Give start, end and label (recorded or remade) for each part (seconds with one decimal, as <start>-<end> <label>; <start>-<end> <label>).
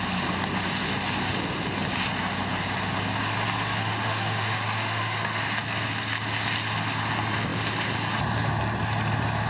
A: 0.0-3.8 recorded; 3.8-5.4 remade; 5.4-9.5 recorded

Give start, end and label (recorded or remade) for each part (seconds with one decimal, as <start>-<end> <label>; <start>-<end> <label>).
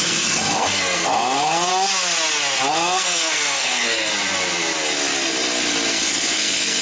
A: 0.0-1.7 remade; 1.7-2.7 recorded; 2.7-4.1 remade; 4.1-5.9 recorded; 5.9-6.8 remade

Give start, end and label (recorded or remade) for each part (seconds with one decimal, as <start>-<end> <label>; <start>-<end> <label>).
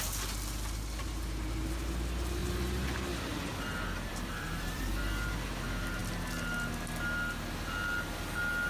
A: 0.0-2.4 recorded; 2.4-3.1 remade; 3.1-4.1 recorded; 4.1-5.0 remade; 5.0-8.7 recorded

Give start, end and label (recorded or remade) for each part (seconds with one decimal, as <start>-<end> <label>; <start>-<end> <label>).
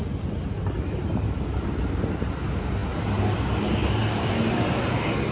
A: 0.0-5.3 recorded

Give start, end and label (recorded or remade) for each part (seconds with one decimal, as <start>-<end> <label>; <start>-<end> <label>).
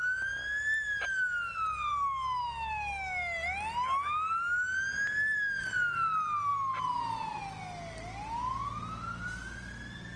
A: 0.0-10.2 recorded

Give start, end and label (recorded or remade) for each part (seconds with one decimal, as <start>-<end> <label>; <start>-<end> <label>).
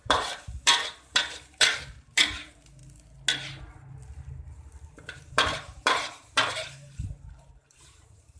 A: 0.0-2.8 remade; 2.8-4.9 recorded; 4.9-8.4 remade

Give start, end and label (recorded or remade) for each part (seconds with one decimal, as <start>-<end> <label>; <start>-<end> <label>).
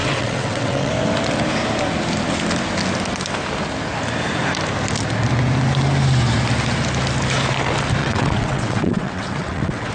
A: 0.0-0.9 remade; 0.9-8.0 recorded; 8.0-9.9 remade